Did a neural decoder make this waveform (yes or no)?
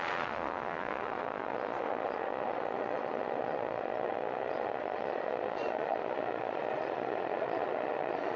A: yes